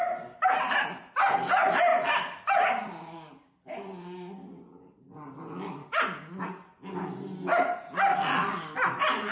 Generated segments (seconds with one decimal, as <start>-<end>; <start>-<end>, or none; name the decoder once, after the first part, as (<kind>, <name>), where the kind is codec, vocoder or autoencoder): none